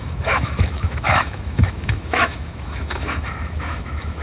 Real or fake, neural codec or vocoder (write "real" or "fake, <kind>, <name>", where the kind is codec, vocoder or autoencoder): fake, autoencoder, DAC-VAE